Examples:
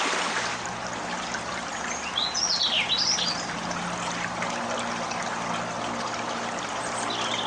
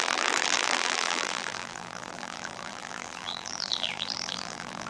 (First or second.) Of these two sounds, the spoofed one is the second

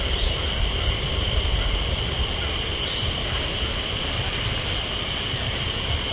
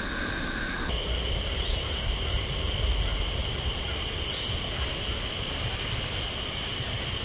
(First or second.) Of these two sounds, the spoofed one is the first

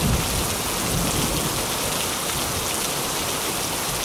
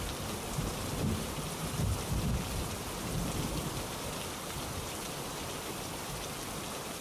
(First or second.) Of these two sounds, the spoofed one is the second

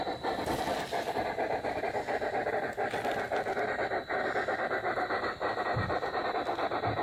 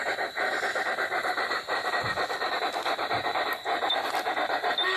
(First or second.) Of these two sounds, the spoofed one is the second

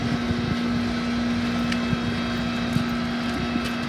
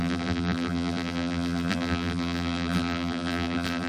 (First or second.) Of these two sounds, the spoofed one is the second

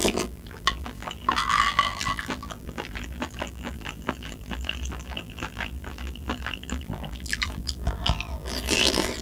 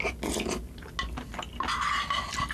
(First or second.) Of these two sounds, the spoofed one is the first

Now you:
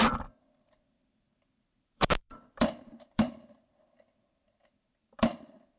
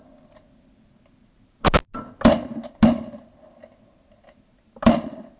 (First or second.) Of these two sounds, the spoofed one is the first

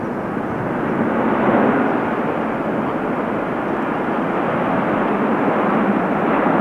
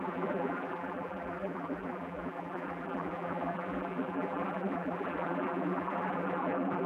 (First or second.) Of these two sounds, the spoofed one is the second